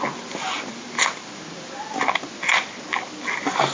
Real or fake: real